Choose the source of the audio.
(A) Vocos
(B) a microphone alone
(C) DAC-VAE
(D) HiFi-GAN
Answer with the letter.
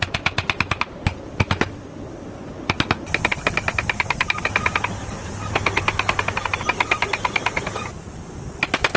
B